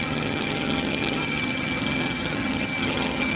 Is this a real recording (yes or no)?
no